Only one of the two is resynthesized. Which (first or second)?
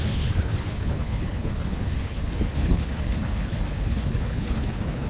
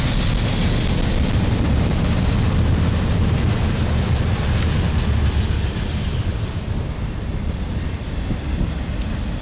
first